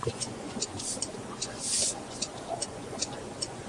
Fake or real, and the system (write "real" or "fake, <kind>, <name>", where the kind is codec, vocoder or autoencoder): fake, vocoder, Vocos